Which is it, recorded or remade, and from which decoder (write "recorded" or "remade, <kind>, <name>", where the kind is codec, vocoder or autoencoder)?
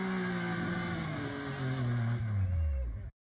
recorded